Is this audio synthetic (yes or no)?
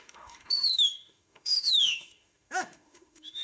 yes